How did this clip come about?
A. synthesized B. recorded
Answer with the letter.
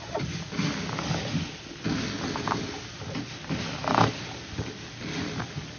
B